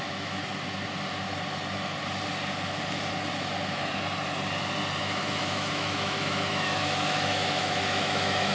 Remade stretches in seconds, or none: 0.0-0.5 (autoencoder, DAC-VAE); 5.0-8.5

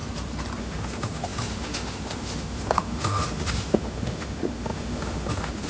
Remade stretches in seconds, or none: 0.6-5.7 (autoencoder, DAC-VAE)

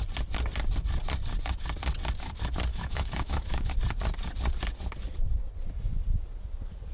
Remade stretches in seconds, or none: 2.7-3.7 (autoencoder, DAC-VAE)